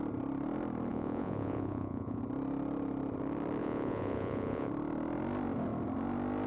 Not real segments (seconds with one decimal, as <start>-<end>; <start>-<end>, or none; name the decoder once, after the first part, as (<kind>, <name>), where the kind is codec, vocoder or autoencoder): 0.9-2.2 (vocoder, Vocos); 3.6-4.7